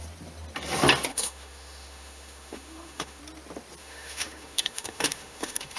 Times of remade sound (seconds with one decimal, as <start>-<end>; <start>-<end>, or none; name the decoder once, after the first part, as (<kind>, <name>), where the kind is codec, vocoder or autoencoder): 1.1-3.2 (autoencoder, DAC-VAE); 3.8-5.8